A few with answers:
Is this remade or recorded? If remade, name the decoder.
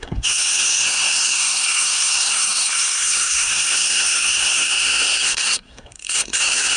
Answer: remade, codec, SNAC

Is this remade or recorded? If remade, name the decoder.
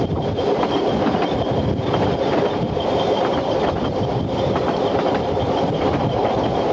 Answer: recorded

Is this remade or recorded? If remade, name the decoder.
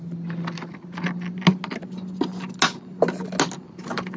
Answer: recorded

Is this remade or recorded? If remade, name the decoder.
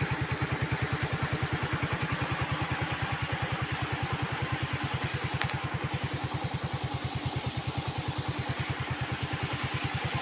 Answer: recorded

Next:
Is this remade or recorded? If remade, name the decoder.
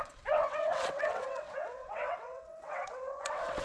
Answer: remade, vocoder, WaveNeXt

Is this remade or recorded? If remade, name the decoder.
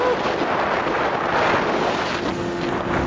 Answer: recorded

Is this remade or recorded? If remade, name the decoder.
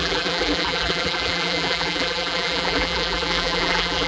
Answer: remade, vocoder, BigVGAN v2